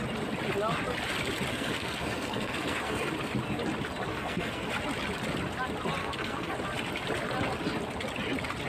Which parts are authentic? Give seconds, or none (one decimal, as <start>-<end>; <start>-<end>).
0.0-1.5; 3.1-4.1; 4.7-6.0; 6.5-8.7